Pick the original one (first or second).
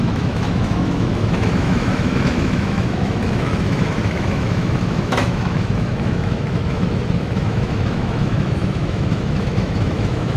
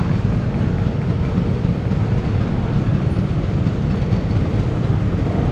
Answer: second